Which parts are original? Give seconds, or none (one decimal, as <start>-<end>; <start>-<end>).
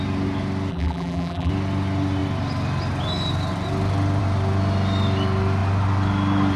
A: 0.0-0.7; 1.5-6.6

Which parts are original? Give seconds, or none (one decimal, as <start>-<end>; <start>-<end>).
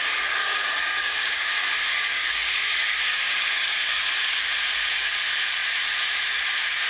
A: 0.0-0.4; 4.5-6.9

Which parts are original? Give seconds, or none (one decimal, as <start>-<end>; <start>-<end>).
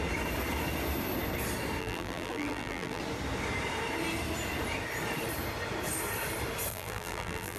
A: 0.0-1.8; 3.0-6.7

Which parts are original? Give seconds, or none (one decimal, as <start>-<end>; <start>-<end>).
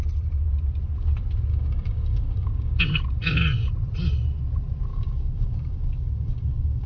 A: 0.0-1.5; 2.8-4.9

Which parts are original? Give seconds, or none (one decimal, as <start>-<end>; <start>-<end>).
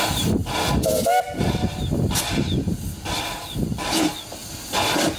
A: 0.0-5.2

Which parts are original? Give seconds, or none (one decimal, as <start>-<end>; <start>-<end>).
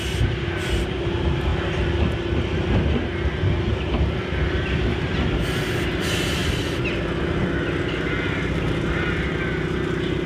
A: 0.0-10.3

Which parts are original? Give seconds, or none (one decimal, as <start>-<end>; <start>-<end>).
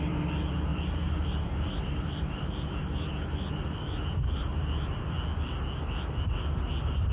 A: 0.0-0.7; 5.0-7.1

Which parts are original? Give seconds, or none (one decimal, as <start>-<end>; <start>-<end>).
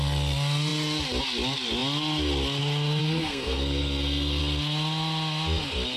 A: 0.0-3.0; 4.4-6.0